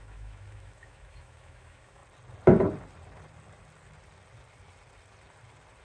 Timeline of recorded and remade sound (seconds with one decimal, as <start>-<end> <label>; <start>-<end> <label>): 0.0-2.0 remade; 2.0-5.8 recorded